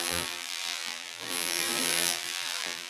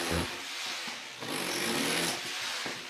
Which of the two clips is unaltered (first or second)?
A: second